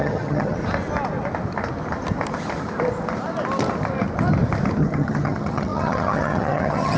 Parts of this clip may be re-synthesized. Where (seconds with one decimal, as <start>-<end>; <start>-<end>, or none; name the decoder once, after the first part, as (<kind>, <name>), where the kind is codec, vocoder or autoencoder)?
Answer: 0.0-0.6 (vocoder, HiFi-GAN); 4.8-7.0